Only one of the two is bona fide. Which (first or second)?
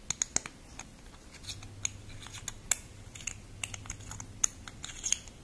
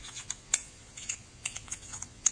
first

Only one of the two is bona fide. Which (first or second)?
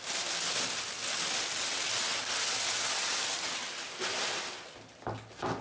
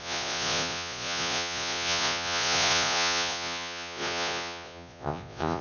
first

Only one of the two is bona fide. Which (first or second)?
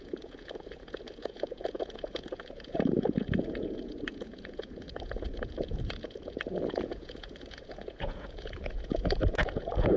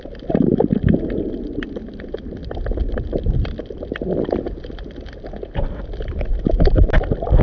second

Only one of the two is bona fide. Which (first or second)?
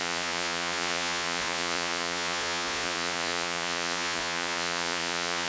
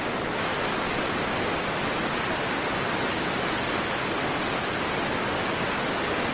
second